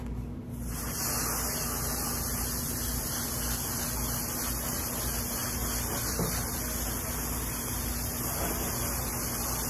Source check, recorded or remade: recorded